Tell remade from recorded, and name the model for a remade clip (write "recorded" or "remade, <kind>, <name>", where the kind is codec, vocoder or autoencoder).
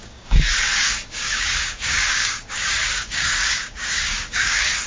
remade, codec, DAC